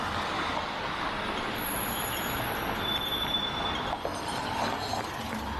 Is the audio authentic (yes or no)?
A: yes